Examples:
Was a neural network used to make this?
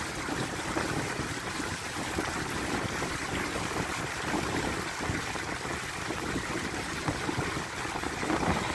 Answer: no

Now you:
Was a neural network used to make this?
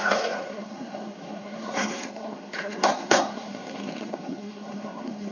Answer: yes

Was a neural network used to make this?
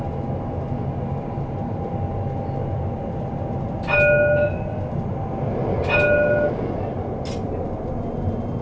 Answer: no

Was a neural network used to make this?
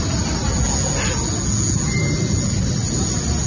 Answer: no